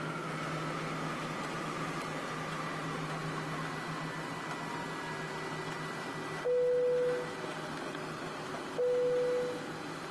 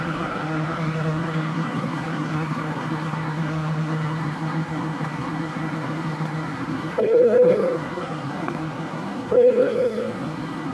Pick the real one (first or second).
first